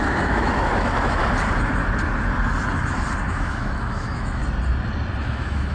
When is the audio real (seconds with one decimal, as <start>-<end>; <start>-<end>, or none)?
1.2-3.3; 4.4-5.2